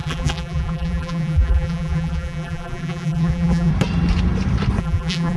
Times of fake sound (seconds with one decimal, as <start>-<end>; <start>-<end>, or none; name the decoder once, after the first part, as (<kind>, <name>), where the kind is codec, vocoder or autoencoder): 0.0-3.7 (vocoder, BigVGAN v2); 4.8-5.4